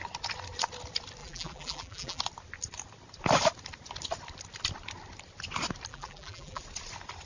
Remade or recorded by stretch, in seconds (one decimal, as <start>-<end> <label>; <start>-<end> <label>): 0.0-1.2 recorded; 1.2-2.2 remade; 2.2-5.9 recorded; 5.9-6.6 remade; 6.6-7.2 recorded